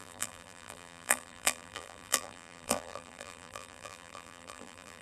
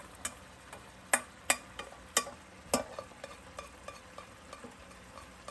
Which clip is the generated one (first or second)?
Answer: first